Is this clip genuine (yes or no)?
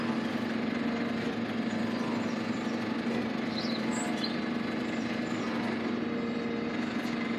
yes